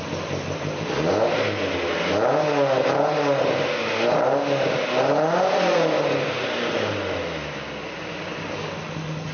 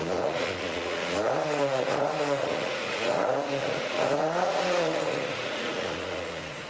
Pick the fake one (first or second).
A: second